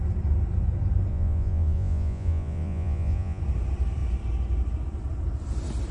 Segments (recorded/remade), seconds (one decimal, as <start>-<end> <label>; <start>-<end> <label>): 0.0-1.1 recorded; 1.1-3.4 remade; 3.4-5.9 recorded